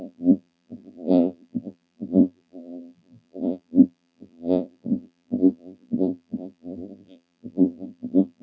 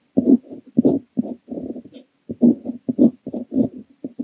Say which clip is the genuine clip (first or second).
second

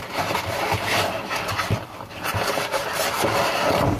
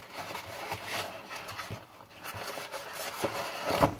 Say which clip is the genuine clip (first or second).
second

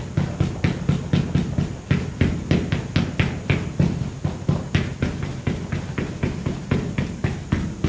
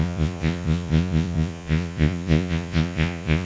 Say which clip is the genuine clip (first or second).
first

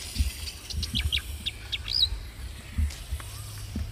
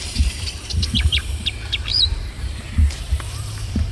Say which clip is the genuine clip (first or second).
first